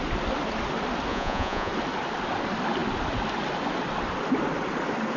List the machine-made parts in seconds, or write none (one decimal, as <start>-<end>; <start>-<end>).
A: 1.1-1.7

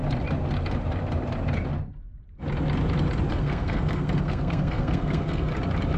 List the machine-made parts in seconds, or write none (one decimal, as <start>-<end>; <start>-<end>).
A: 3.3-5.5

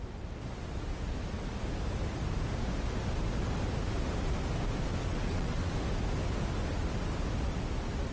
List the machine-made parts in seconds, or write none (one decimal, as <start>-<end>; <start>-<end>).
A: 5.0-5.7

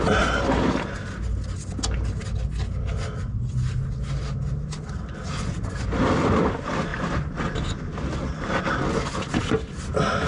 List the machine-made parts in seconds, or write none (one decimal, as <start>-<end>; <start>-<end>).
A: none